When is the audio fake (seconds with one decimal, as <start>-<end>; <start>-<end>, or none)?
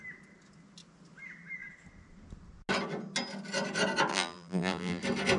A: 4.1-5.0